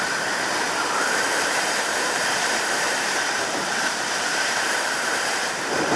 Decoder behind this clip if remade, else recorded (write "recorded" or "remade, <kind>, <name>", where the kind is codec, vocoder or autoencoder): remade, vocoder, BigVGAN v2